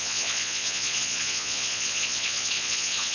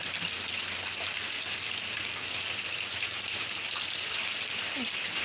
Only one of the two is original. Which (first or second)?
second